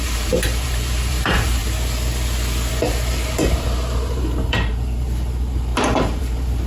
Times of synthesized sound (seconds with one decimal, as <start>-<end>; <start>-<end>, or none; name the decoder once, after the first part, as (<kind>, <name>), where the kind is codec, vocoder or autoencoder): 0.0-1.6 (vocoder, BigVGAN v2); 2.7-6.7